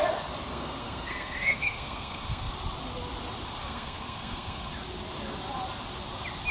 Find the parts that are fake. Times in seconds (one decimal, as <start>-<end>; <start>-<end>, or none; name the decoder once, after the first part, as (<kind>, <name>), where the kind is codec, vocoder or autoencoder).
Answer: 0.5-2.5 (codec, SNAC); 3.6-4.7